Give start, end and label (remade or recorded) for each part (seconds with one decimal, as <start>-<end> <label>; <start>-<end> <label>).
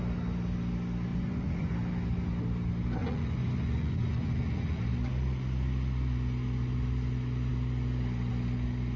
0.0-1.1 recorded; 1.1-1.7 remade; 1.7-3.0 recorded; 3.0-4.8 remade; 4.8-9.0 recorded